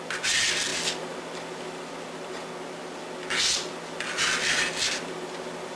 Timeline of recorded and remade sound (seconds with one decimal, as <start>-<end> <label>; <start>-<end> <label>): 0.0-5.8 recorded